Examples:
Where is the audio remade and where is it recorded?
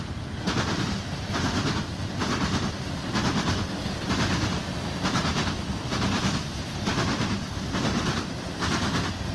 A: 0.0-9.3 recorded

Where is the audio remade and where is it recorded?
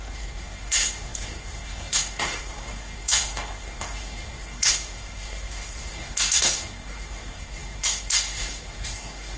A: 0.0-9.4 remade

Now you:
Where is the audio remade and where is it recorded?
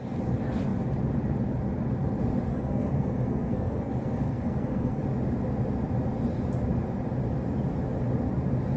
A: 0.0-2.5 recorded; 2.5-5.0 remade; 5.0-8.8 recorded